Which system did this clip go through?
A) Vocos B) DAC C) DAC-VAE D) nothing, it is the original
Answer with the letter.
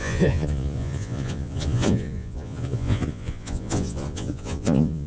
A